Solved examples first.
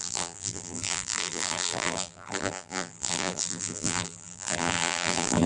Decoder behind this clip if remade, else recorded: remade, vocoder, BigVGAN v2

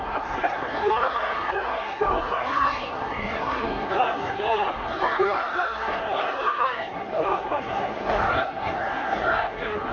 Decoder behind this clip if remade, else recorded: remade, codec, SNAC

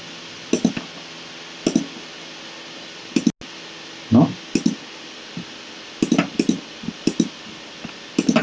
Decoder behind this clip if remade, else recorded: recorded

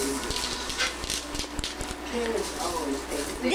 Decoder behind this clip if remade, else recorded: recorded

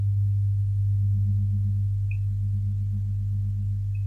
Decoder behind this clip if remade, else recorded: recorded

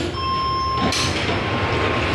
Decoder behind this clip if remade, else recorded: recorded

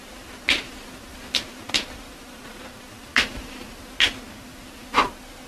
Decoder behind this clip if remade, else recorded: recorded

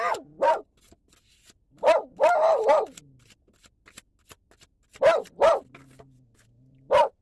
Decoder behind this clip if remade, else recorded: recorded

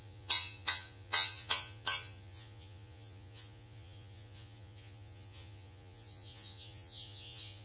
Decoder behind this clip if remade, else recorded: remade, vocoder, Vocos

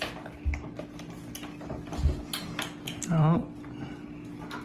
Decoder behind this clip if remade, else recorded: recorded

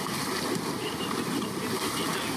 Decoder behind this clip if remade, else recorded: recorded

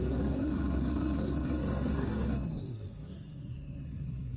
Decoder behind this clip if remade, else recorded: remade, codec, SNAC